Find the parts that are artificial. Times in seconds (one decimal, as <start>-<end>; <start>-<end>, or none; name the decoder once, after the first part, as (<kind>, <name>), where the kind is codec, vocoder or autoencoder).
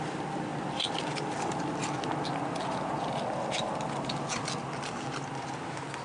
none